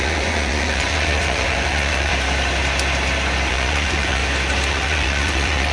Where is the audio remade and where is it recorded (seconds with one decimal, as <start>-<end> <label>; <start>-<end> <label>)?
0.0-2.1 remade; 2.1-3.5 recorded; 3.5-4.2 remade; 4.2-4.7 recorded; 4.7-5.7 remade